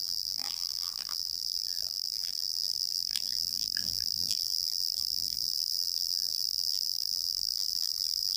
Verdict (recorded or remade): remade